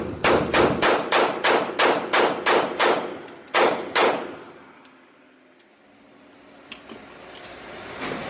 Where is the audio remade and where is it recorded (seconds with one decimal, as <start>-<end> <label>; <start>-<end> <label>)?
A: 0.0-8.3 recorded